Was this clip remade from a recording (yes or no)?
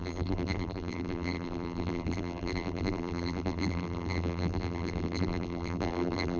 yes